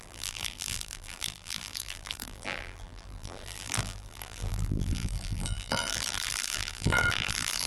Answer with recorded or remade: remade